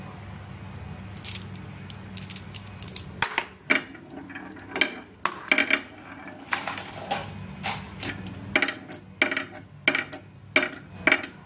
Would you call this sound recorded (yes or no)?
yes